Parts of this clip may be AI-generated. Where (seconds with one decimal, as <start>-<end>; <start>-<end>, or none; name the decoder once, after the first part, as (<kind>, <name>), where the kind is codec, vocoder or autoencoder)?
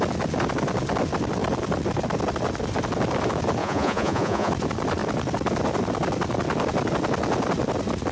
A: 3.6-4.5 (vocoder, Vocos)